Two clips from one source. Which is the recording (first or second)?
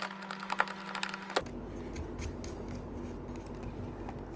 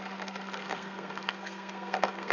first